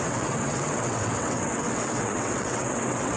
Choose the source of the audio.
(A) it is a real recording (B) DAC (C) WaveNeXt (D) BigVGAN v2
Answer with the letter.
C